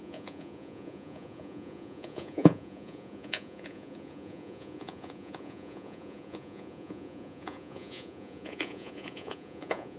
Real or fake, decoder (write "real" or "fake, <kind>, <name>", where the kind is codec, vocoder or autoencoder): fake, vocoder, Vocos